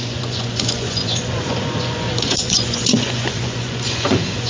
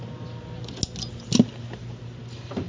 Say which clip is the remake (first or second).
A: first